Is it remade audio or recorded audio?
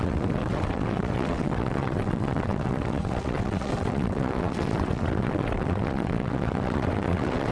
remade